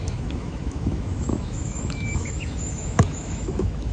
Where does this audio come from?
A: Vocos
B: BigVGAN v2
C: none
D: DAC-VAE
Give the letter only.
D